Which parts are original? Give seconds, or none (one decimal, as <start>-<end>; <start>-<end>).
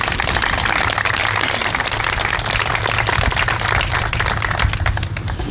0.0-5.5